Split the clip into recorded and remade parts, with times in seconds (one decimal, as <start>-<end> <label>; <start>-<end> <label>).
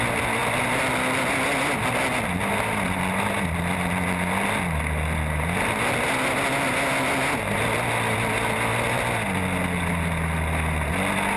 0.0-11.4 recorded